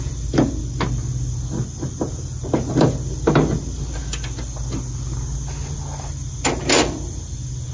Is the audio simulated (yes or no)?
no